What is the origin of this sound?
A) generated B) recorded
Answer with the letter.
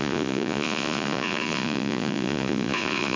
A